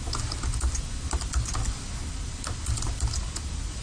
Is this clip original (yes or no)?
yes